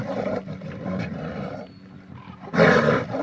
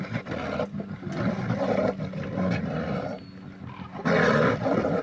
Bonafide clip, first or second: second